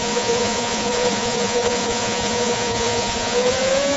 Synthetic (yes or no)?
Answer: yes